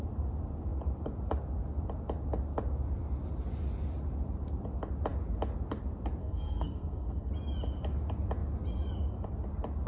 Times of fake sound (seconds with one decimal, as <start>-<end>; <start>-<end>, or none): 6.2-7.3